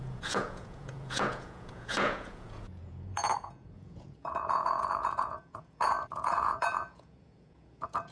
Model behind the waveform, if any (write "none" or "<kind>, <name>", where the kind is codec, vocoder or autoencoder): vocoder, Vocos